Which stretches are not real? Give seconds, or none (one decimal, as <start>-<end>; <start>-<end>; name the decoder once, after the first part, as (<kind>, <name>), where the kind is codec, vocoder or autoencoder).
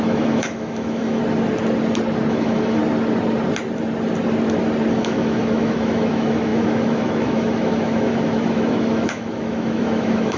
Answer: 0.0-1.2 (autoencoder, DAC-VAE); 2.3-2.8; 4.9-10.4